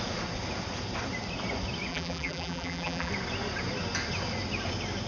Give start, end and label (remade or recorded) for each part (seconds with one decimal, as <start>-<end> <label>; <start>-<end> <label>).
0.0-1.9 recorded; 1.9-3.1 remade; 3.1-5.1 recorded